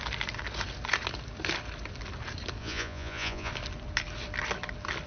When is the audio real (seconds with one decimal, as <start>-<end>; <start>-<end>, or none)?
0.0-2.6; 3.5-5.1